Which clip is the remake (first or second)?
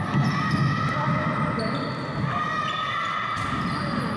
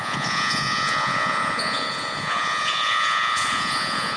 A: second